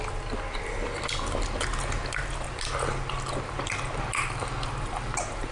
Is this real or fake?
real